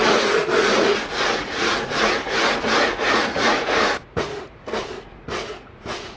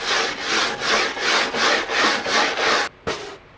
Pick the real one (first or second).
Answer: second